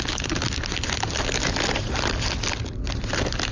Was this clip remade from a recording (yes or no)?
no